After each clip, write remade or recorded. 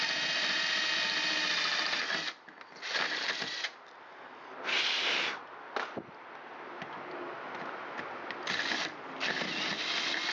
recorded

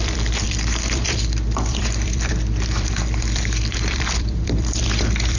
remade